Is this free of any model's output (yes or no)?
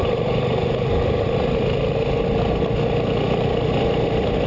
yes